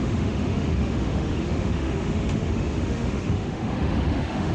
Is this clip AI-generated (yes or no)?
yes